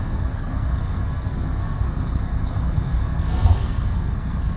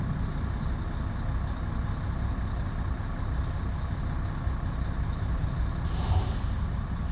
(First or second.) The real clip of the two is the second